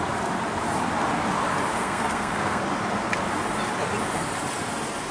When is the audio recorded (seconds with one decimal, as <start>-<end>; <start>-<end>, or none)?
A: 0.0-1.7; 2.6-5.1